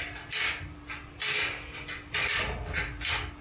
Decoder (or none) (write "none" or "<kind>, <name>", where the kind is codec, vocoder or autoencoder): none